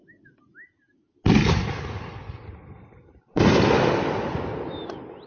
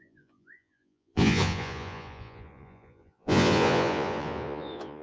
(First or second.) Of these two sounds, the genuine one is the first